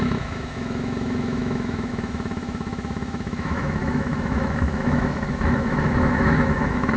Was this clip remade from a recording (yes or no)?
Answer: yes